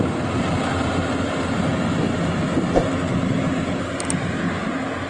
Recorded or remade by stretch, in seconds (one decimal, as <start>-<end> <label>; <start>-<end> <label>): 0.0-5.1 recorded